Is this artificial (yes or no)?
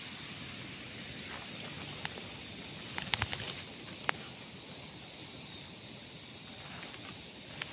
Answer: no